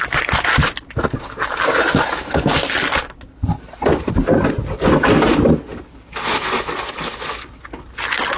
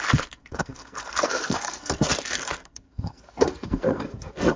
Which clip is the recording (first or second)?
first